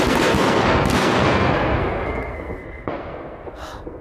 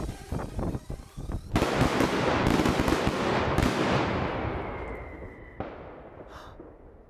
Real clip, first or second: second